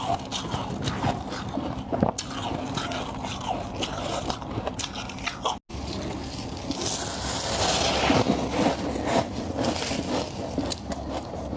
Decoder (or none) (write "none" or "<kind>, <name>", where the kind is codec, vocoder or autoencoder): none